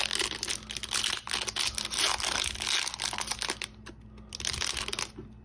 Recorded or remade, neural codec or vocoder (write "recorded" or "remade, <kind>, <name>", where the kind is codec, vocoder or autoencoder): recorded